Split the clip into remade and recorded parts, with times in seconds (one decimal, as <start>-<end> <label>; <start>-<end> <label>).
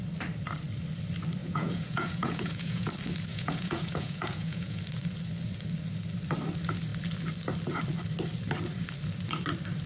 0.0-1.4 recorded; 1.4-2.9 remade; 2.9-3.3 recorded; 3.3-4.8 remade; 4.8-9.9 recorded